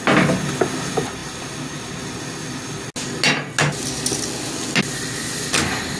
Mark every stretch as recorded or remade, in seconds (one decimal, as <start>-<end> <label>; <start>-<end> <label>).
0.0-6.0 recorded